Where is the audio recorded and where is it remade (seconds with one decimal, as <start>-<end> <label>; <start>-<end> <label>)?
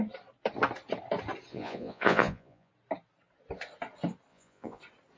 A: 0.0-1.5 recorded; 1.5-2.7 remade; 2.7-4.3 recorded; 4.3-4.8 remade; 4.8-5.2 recorded